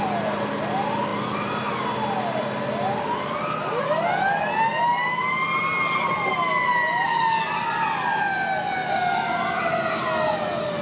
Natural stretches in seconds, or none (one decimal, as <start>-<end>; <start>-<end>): 0.0-10.8